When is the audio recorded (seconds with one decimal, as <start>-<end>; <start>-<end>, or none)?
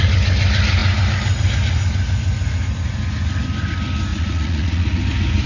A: 0.0-4.1; 5.0-5.5